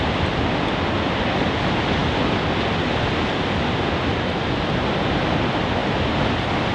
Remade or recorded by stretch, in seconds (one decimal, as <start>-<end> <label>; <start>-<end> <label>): 0.0-6.7 recorded

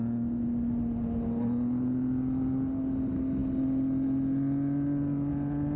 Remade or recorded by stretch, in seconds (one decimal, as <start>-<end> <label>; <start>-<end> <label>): 0.0-5.8 recorded

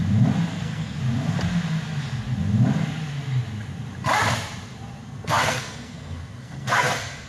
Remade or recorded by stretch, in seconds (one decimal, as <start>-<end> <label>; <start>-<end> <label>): 0.0-0.5 recorded; 0.5-1.0 remade; 1.0-5.0 recorded; 5.0-7.3 remade

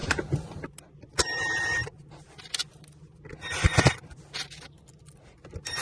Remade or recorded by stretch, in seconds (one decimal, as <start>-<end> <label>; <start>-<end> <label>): 0.0-0.8 remade; 0.8-5.8 recorded

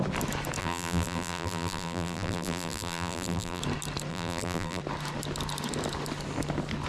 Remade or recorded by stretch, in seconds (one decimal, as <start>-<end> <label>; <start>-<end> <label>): 0.0-0.6 recorded; 0.6-3.6 remade; 3.6-4.1 recorded; 4.1-4.8 remade; 4.8-6.9 recorded

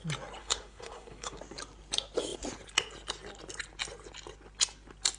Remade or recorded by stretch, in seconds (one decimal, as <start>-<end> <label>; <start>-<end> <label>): 0.0-0.4 recorded; 0.4-1.4 remade; 1.4-5.2 recorded

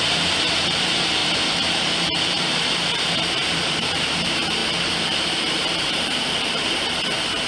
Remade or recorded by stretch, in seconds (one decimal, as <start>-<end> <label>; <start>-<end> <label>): 0.0-7.5 remade